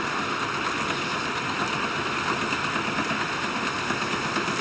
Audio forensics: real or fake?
real